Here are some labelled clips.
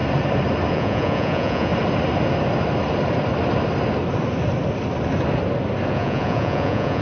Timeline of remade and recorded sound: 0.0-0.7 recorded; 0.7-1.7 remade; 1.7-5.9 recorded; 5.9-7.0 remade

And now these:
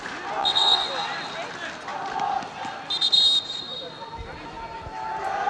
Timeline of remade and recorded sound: 0.0-0.4 recorded; 0.4-0.9 remade; 0.9-5.5 recorded

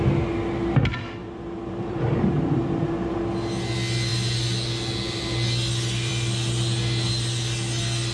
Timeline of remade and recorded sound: 0.0-1.2 recorded; 1.2-3.2 remade; 3.2-8.1 recorded

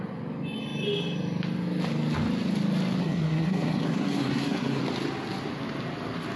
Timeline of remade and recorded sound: 0.0-3.0 recorded; 3.0-4.8 remade; 4.8-6.4 recorded

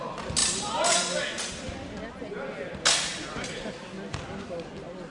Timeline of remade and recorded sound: 0.0-5.1 recorded